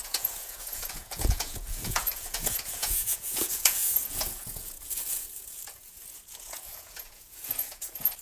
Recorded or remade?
remade